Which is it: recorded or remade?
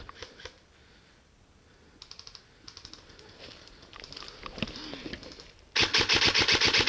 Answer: recorded